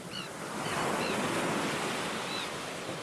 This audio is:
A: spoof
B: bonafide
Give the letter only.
B